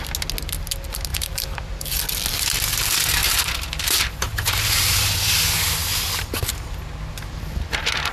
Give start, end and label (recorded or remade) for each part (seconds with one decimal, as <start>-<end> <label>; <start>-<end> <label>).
0.0-1.1 recorded; 1.1-2.0 remade; 2.0-3.2 recorded; 3.2-5.0 remade; 5.0-5.8 recorded; 5.8-6.5 remade; 6.5-8.1 recorded